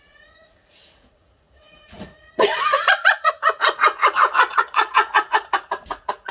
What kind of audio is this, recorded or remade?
remade